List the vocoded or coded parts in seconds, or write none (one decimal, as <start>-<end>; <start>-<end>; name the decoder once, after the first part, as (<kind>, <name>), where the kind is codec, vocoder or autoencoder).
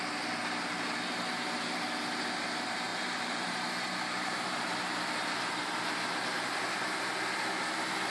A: 2.9-4.6 (vocoder, BigVGAN v2)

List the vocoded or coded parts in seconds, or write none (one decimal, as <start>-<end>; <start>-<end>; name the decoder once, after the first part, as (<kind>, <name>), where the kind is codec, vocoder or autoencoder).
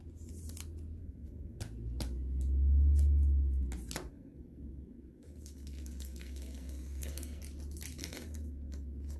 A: 1.0-1.6 (codec, SNAC); 4.1-7.4; 8.0-9.2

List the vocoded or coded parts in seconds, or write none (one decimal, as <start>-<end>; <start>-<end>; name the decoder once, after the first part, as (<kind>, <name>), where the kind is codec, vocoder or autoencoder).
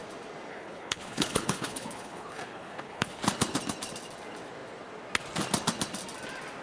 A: 0.5-3.2 (codec, HILCodec)